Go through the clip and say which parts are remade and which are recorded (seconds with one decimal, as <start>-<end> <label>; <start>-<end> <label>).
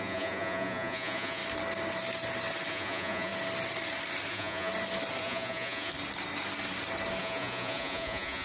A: 0.0-1.4 remade; 1.4-2.7 recorded; 2.7-3.3 remade; 3.3-4.3 recorded; 4.3-4.7 remade; 4.7-5.2 recorded; 5.2-5.9 remade; 5.9-7.2 recorded; 7.2-8.4 remade